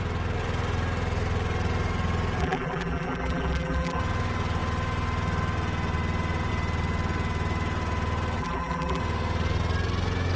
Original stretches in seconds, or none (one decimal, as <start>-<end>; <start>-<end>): 0.0-2.4; 4.0-8.4; 9.0-10.4